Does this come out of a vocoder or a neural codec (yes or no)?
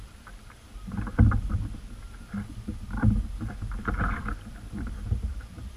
yes